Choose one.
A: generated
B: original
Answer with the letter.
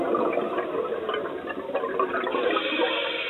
B